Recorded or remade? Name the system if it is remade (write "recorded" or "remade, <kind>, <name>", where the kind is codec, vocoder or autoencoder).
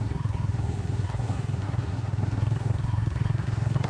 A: remade, codec, SNAC